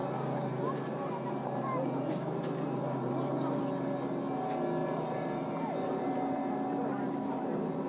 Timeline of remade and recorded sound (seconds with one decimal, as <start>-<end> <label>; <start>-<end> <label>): 0.0-3.6 remade; 3.6-4.8 recorded; 4.8-7.5 remade; 7.5-7.9 recorded